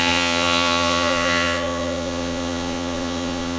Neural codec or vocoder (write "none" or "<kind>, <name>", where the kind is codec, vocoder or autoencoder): vocoder, Vocos